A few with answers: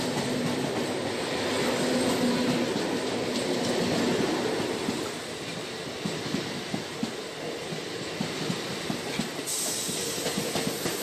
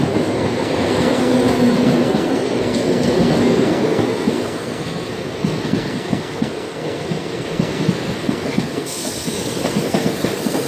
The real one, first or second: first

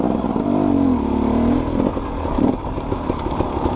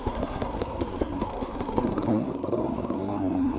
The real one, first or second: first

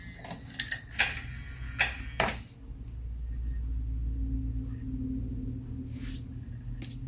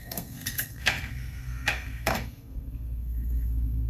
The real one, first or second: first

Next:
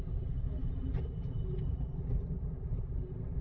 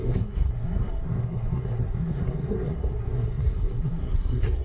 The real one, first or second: first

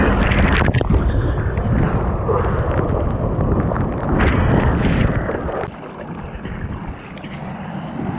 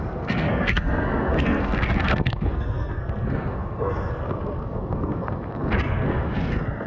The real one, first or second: first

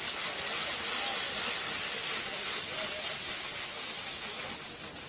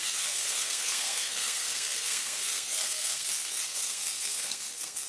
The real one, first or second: first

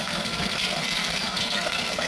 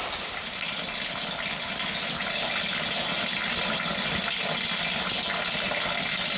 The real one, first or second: second